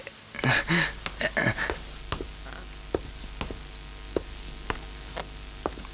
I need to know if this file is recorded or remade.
recorded